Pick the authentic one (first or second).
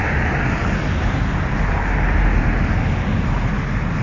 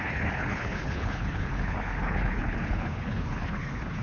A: first